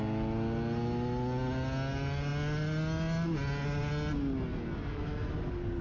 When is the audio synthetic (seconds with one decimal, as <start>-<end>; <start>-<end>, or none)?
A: none